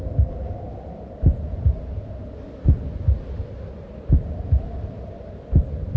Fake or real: real